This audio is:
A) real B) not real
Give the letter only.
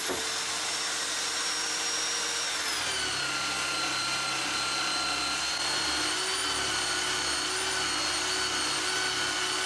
A